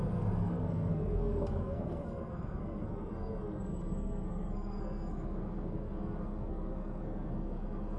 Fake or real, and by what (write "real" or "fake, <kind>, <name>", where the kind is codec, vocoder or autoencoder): fake, codec, SNAC